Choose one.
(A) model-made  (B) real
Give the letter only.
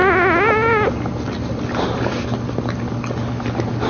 B